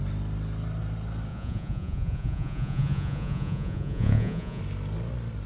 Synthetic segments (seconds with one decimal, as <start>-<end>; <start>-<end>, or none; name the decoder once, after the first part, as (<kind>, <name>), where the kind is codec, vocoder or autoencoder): 1.3-4.6 (vocoder, Vocos)